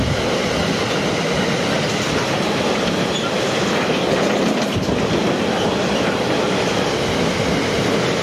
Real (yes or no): yes